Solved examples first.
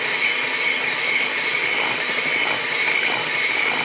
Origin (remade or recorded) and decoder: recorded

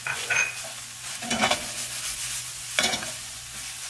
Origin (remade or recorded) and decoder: remade, vocoder, Vocos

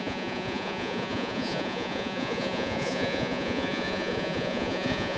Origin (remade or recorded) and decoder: remade, vocoder, Vocos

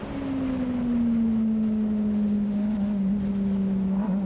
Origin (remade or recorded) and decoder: recorded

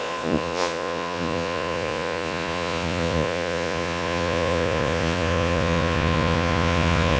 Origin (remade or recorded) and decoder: remade, vocoder, Vocos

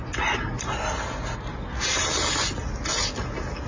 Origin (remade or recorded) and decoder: recorded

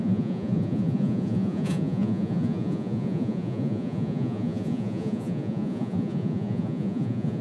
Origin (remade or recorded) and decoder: remade, vocoder, Vocos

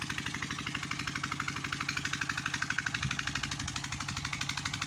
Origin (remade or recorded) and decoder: recorded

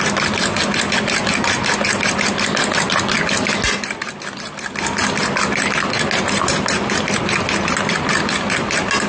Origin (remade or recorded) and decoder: recorded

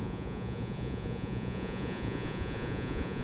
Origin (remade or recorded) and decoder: remade, vocoder, Vocos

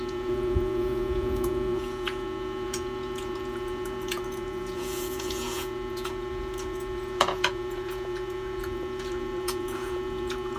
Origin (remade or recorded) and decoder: remade, vocoder, Vocos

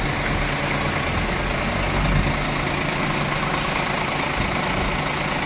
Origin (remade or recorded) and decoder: recorded